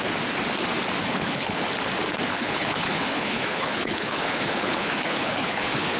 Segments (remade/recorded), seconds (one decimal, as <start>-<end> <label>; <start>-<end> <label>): 0.0-1.0 recorded; 1.0-1.6 remade; 1.6-2.3 recorded; 2.3-6.0 remade